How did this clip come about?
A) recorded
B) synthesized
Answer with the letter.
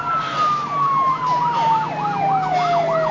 A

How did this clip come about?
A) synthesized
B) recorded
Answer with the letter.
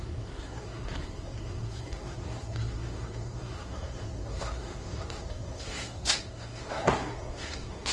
A